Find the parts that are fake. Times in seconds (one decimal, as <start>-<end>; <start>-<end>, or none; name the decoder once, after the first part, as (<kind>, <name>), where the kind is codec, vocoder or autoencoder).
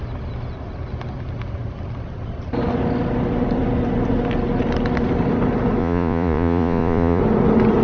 5.8-7.2 (vocoder, Vocos)